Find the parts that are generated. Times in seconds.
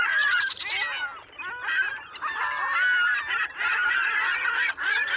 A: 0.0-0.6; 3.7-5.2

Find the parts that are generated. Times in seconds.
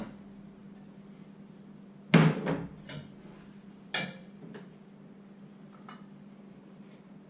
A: none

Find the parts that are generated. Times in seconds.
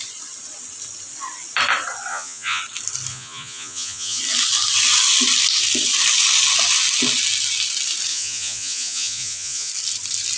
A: 2.1-2.6; 3.1-4.2; 8.1-9.7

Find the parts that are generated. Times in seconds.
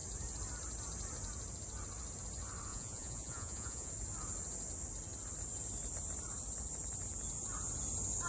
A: 2.7-3.9